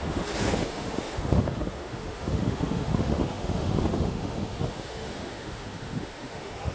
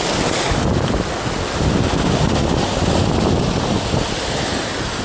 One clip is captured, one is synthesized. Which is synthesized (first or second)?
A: first